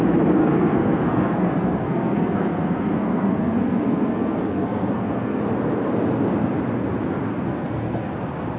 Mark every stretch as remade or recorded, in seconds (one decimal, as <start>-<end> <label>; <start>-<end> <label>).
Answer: 0.0-0.4 recorded; 0.4-5.4 remade; 5.4-7.3 recorded; 7.3-8.1 remade; 8.1-8.6 recorded